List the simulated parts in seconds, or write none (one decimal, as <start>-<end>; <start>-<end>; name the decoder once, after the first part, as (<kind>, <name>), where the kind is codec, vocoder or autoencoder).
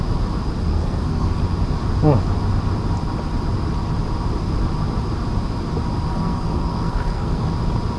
0.7-1.4 (codec, SNAC); 6.1-7.5